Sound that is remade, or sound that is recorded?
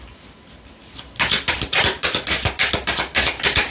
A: recorded